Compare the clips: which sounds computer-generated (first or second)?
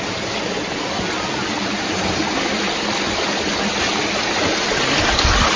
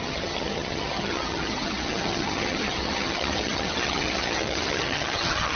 second